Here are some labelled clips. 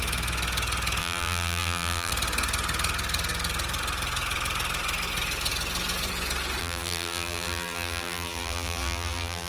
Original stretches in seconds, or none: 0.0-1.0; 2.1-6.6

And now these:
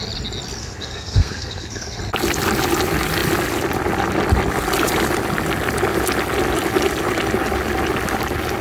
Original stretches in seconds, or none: 0.0-0.6; 2.0-8.6

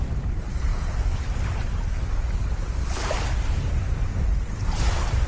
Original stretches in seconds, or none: 0.0-5.3

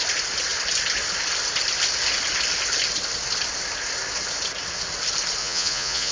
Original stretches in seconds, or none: 0.0-5.4

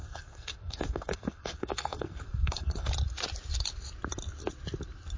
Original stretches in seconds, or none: 2.9-5.2